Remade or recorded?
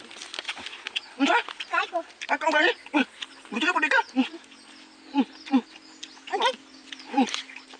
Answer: recorded